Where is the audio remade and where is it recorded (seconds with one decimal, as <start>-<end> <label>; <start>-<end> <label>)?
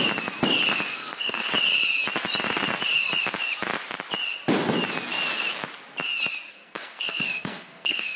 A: 0.0-0.9 recorded; 0.9-1.5 remade; 1.5-6.5 recorded; 6.5-8.2 remade